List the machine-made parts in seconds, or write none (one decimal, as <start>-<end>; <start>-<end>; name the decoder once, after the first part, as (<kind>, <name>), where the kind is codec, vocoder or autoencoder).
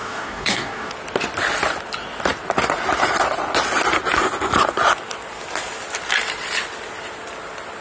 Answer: 0.0-0.9 (codec, DAC)